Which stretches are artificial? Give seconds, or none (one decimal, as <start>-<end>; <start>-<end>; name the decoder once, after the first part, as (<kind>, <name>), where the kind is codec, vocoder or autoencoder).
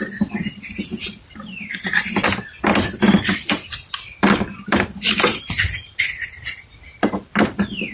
0.0-0.9 (vocoder, BigVGAN v2); 2.2-7.9